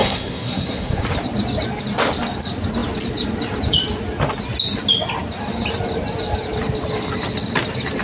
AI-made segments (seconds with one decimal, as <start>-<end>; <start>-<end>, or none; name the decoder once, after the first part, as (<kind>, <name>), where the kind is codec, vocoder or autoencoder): 0.0-1.0 (codec, SNAC)